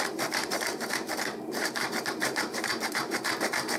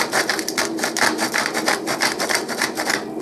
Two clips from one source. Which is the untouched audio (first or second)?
second